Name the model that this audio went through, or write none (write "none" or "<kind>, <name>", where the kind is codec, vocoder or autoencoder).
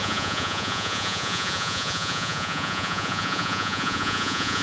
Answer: vocoder, Vocos